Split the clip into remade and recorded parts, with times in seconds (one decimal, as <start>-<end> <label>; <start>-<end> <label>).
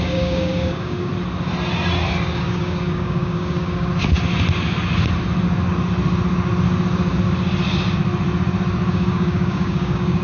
0.0-1.1 remade; 1.1-2.4 recorded; 2.4-3.9 remade; 3.9-8.9 recorded; 8.9-10.2 remade